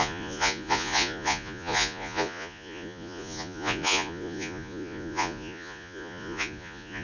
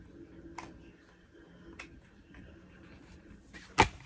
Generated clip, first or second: first